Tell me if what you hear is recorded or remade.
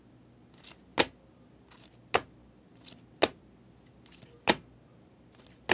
recorded